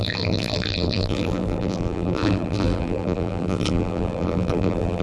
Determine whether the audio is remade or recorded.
remade